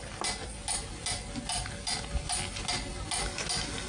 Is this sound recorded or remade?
recorded